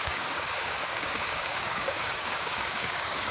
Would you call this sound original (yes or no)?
no